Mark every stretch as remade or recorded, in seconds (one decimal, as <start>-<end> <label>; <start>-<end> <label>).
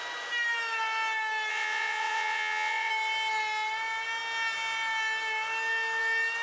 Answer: 0.0-1.5 recorded; 1.5-2.9 remade; 2.9-6.4 recorded